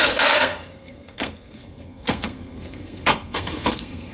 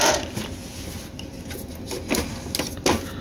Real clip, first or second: second